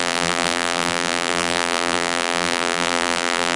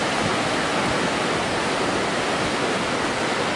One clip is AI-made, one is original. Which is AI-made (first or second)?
first